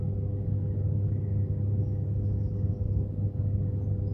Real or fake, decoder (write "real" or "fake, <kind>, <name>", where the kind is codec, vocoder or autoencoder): fake, codec, DAC